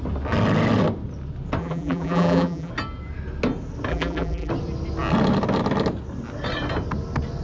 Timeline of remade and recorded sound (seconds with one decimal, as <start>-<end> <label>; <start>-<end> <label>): 0.0-1.6 recorded; 1.6-2.7 remade; 2.7-3.9 recorded; 3.9-4.5 remade; 4.5-7.4 recorded